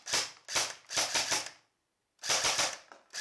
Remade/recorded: recorded